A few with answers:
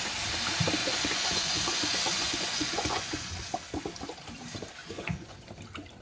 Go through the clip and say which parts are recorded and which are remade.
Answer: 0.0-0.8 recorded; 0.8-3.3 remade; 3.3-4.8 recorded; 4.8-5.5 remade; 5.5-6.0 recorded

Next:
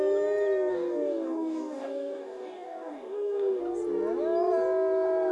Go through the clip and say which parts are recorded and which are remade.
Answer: 0.0-0.7 recorded; 0.7-3.6 remade; 3.6-5.3 recorded